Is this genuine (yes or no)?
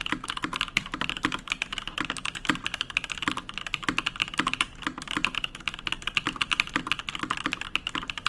yes